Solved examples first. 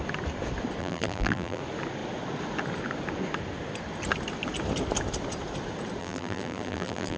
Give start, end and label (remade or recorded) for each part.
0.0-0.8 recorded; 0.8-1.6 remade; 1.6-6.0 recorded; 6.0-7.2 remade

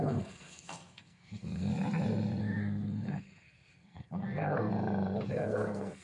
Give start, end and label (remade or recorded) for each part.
0.0-1.7 remade; 1.7-2.4 recorded; 2.4-4.7 remade; 4.7-5.3 recorded; 5.3-6.0 remade

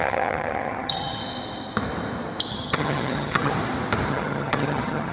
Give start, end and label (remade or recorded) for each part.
0.0-1.2 remade; 1.2-2.5 recorded; 2.5-3.5 remade; 3.5-4.1 recorded; 4.1-5.1 remade